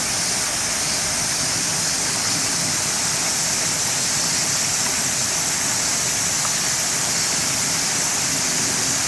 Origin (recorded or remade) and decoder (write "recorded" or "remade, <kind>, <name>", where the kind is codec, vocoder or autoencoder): recorded